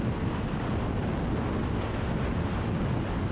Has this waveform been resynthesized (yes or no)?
no